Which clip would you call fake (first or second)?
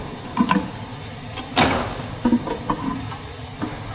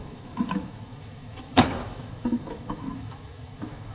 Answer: second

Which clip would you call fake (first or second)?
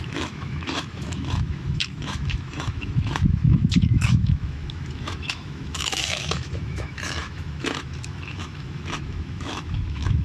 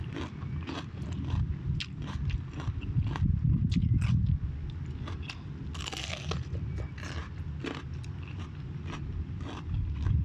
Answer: first